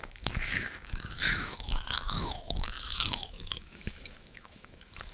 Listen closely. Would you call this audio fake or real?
fake